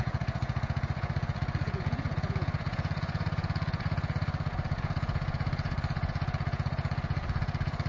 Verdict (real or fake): fake